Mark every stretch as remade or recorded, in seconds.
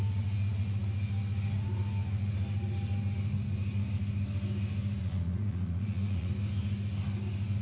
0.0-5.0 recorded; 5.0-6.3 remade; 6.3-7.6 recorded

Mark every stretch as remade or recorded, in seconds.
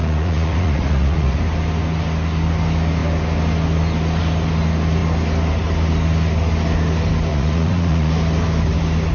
0.0-1.4 remade; 1.4-7.3 recorded; 7.3-8.1 remade; 8.1-9.1 recorded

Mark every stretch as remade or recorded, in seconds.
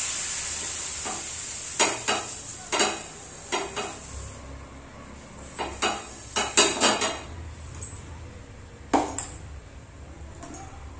0.0-11.0 recorded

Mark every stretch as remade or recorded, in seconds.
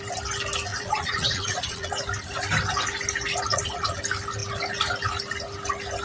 0.0-0.7 recorded; 0.7-2.0 remade; 2.0-3.5 recorded; 3.5-4.0 remade; 4.0-6.0 recorded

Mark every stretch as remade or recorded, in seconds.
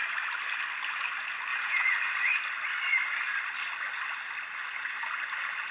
0.0-1.5 recorded; 1.5-2.3 remade; 2.3-5.7 recorded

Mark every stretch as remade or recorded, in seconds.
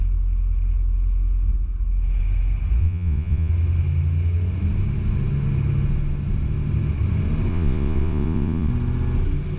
0.0-2.8 recorded; 2.8-3.5 remade; 3.5-7.5 recorded; 7.5-8.7 remade; 8.7-9.6 recorded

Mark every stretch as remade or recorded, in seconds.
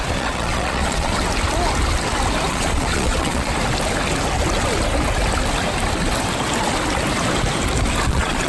0.0-1.1 remade; 1.1-2.5 recorded; 2.5-3.5 remade; 3.5-8.1 recorded; 8.1-8.5 remade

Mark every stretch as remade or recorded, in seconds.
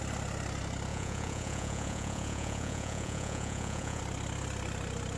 0.0-0.9 recorded; 0.9-4.0 remade; 4.0-5.2 recorded